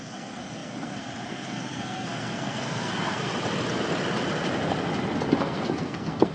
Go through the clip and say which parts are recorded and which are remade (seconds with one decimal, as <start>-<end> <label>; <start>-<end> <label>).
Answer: 0.0-3.3 remade; 3.3-5.4 recorded; 5.4-6.3 remade